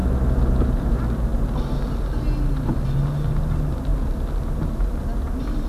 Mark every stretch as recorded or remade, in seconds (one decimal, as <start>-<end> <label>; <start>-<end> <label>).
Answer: 0.0-5.7 recorded